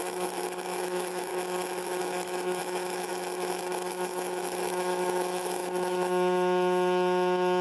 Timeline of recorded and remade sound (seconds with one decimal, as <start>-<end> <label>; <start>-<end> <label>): 0.0-1.3 remade; 1.3-2.0 recorded; 2.0-7.6 remade